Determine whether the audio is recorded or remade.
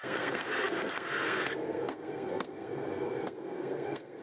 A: remade